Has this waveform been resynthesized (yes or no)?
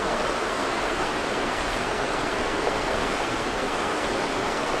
yes